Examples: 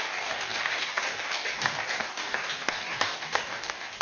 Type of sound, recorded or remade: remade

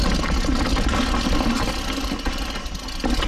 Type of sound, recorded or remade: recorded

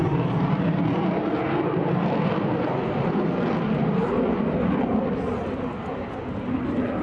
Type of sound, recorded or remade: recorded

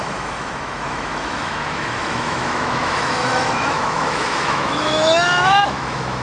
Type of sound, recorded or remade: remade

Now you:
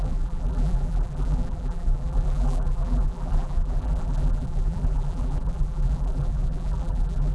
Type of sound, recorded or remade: remade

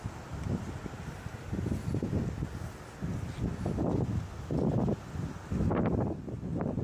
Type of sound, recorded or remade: recorded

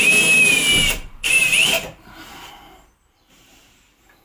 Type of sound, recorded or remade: remade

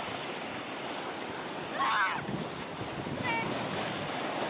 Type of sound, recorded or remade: recorded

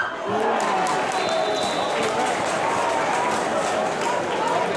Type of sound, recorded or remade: recorded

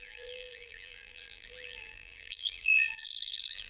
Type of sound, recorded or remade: remade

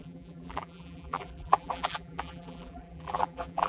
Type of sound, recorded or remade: remade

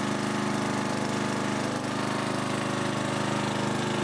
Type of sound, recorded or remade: recorded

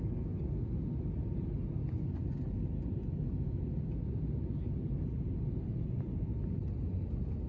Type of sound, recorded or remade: recorded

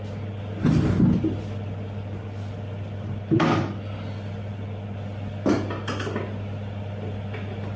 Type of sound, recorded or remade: recorded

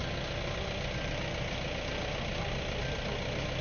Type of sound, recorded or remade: recorded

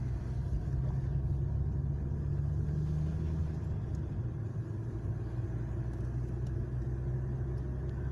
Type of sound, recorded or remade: recorded